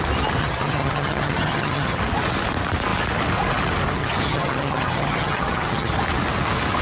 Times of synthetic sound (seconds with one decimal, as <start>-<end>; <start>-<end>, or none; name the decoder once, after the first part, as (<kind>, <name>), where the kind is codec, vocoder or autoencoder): 0.4-2.0 (vocoder, HiFi-GAN); 4.0-5.9